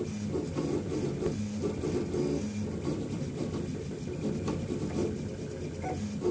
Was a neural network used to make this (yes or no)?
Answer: no